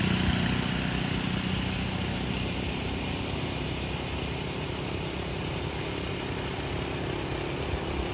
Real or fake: real